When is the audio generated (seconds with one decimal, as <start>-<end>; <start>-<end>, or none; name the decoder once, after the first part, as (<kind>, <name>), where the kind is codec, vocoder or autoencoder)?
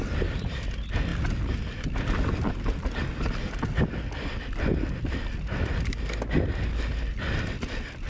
none